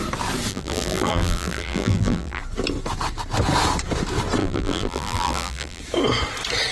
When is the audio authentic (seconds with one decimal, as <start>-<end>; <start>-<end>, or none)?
0.0-0.5; 2.4-4.4; 5.8-6.7